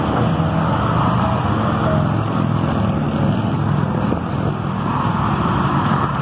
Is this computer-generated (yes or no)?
no